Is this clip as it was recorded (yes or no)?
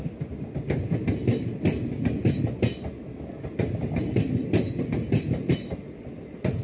yes